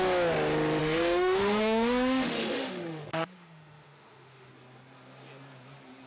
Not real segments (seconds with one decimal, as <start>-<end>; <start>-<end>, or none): 0.8-4.5